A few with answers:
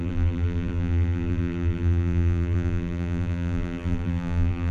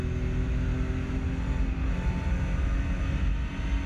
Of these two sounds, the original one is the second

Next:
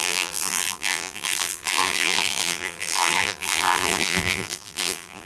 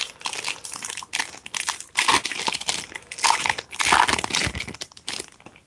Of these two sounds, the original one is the second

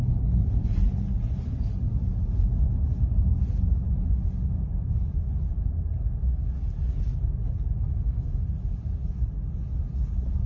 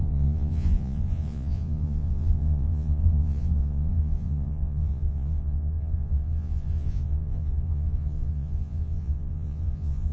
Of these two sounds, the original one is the first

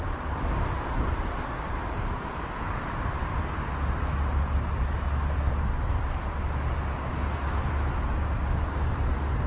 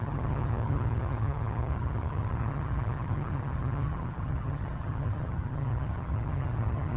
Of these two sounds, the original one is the first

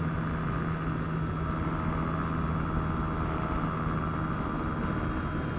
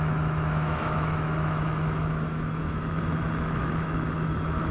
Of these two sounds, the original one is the first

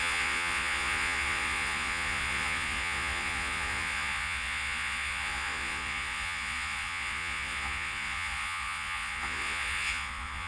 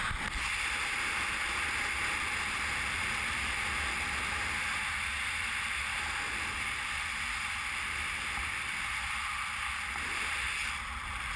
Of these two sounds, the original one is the second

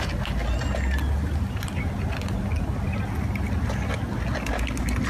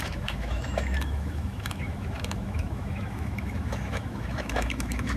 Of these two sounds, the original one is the first